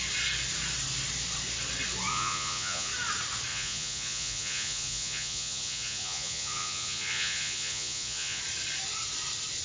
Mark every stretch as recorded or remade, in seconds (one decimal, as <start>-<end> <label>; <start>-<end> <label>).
0.0-2.1 recorded; 2.1-2.9 remade; 2.9-3.5 recorded; 3.5-8.4 remade; 8.4-9.6 recorded